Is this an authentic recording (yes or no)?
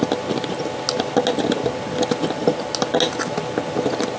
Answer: yes